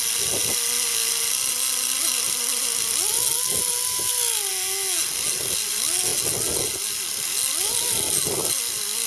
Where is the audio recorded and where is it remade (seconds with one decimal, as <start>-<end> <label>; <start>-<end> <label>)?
0.0-9.1 recorded